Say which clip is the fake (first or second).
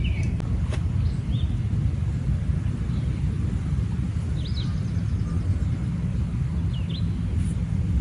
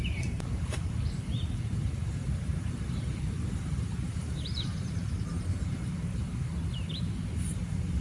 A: second